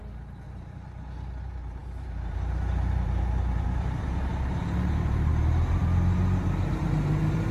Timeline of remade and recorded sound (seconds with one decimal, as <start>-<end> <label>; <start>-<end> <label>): 0.0-7.5 remade

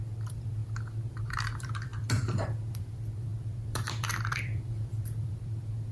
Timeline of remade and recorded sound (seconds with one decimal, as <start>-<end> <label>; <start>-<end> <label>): 0.0-5.9 remade

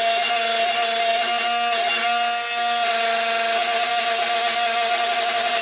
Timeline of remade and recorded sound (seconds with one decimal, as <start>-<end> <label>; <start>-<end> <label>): 0.0-5.6 recorded

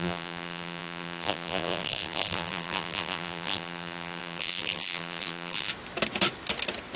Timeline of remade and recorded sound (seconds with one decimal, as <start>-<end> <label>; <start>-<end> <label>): 0.0-5.7 remade; 5.7-7.0 recorded

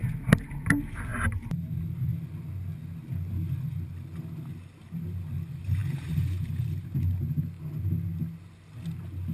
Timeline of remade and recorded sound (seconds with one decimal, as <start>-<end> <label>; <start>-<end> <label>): 0.0-1.1 recorded; 1.1-1.7 remade; 1.7-5.8 recorded; 5.8-6.9 remade; 6.9-9.3 recorded

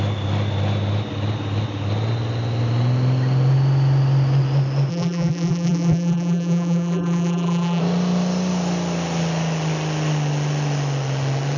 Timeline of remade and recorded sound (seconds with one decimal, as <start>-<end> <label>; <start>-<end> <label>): 0.0-4.9 recorded; 4.9-7.8 remade; 7.8-11.6 recorded